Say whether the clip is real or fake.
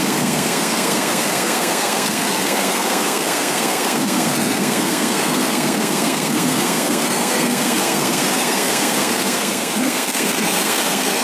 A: fake